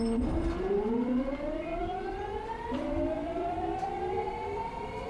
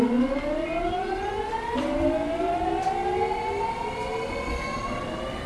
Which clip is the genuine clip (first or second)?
second